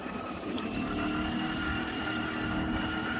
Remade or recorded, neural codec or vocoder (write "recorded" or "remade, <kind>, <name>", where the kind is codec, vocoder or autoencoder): recorded